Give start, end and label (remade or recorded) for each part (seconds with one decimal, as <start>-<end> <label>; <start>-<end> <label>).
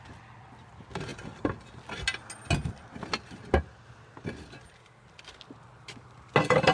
0.0-6.7 recorded